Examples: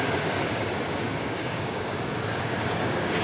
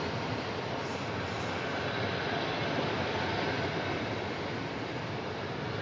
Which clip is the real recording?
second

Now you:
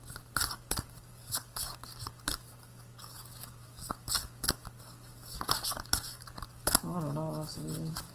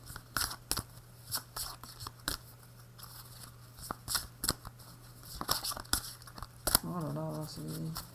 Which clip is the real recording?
second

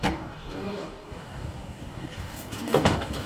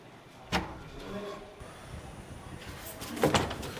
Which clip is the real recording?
second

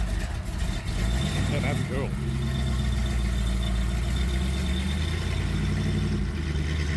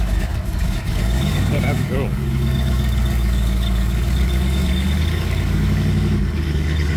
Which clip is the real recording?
first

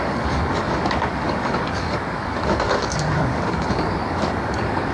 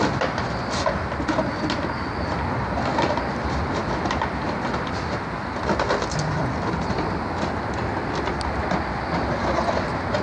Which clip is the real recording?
second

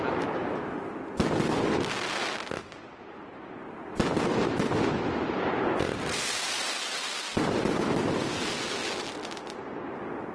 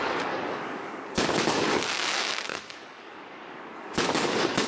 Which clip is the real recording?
first